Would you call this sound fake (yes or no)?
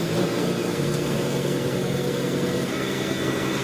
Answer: yes